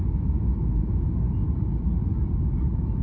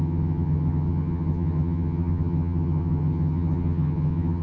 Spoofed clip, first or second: second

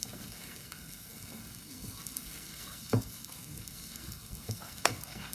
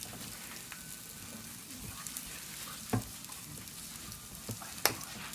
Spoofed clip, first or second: first